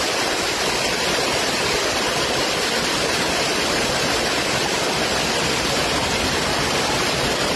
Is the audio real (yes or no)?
yes